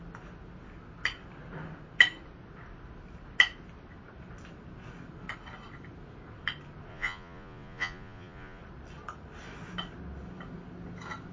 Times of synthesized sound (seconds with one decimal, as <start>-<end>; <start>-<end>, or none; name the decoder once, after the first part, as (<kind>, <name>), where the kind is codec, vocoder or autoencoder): 6.9-8.6 (vocoder, Vocos)